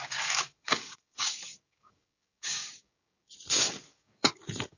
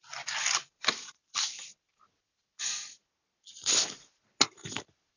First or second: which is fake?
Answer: first